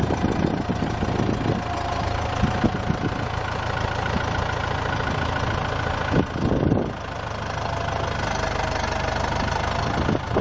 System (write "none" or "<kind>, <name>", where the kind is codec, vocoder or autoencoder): none